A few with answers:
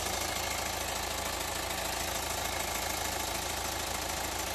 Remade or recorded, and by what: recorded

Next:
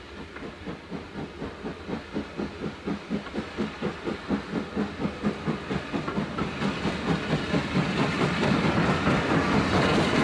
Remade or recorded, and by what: recorded